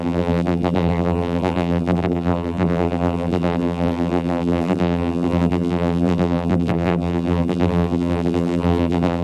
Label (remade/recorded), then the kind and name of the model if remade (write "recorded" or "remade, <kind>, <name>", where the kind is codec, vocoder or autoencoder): remade, vocoder, BigVGAN v2